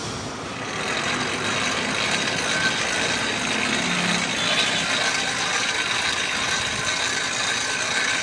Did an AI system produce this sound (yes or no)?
no